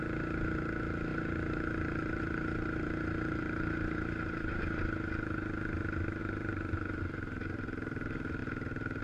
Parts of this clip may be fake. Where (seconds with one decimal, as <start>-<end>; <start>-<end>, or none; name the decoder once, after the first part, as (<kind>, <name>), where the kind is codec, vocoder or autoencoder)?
1.1-4.6 (vocoder, BigVGAN v2); 6.2-7.0

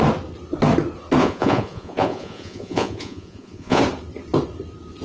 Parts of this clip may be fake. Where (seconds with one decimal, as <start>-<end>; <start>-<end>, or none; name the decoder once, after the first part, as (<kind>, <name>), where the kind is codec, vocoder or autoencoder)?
1.2-3.8 (vocoder, Vocos)

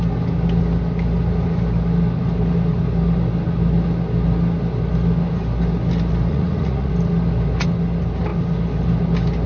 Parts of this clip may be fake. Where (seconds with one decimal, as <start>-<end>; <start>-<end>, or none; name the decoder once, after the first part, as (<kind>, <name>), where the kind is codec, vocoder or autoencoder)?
6.3-6.9 (vocoder, Vocos)

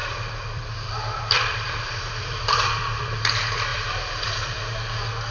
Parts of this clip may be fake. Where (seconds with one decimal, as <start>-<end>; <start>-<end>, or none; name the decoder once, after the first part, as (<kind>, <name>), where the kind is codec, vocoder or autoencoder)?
0.0-3.2 (vocoder, BigVGAN v2); 3.7-4.6

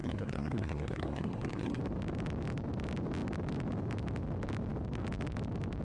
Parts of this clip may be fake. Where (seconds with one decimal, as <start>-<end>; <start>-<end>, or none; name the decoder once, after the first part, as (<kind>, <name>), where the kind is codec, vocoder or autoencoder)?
0.0-1.8 (codec, SNAC)

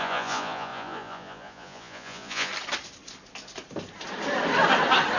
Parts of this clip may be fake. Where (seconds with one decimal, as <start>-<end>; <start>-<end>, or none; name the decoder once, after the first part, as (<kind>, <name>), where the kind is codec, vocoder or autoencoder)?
0.0-2.5 (vocoder, Vocos)

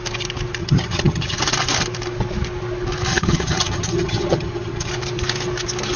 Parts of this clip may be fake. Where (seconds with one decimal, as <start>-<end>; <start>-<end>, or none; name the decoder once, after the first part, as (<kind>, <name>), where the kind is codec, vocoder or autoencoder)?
0.6-1.4 (vocoder, HiFi-GAN); 3.1-4.9

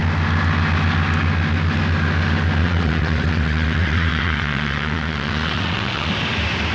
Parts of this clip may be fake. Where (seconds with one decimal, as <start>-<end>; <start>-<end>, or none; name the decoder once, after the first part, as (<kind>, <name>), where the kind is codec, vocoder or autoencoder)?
2.6-6.1 (vocoder, WaveNeXt)